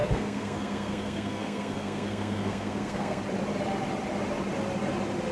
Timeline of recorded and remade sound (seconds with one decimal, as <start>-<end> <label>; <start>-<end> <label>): 0.0-3.2 remade; 3.2-5.3 recorded